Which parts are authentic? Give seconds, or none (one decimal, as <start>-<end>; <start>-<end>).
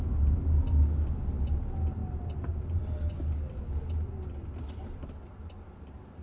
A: 0.0-6.2